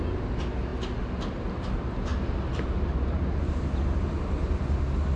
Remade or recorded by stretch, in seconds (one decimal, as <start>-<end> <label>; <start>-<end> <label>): 0.0-5.2 recorded